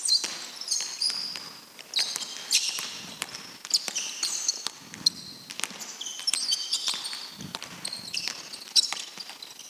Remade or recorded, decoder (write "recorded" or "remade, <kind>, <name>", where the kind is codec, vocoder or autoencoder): recorded